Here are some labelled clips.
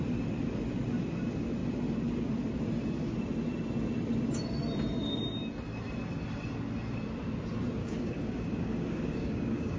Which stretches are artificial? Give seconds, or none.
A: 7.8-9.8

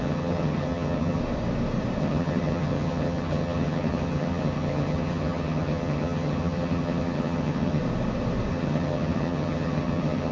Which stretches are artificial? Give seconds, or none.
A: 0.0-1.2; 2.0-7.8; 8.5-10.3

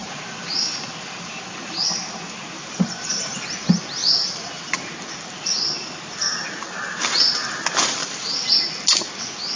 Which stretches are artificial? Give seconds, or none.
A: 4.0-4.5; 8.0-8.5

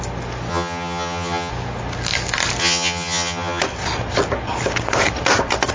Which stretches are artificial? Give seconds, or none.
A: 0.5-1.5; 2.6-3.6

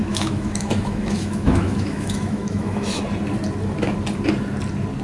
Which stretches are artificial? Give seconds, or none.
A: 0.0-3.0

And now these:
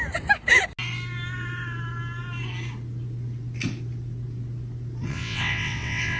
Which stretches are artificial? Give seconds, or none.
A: 5.1-6.2